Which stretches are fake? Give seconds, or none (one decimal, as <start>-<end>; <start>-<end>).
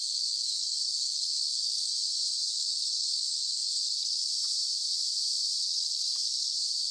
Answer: 0.0-1.9; 2.5-4.3; 5.6-6.9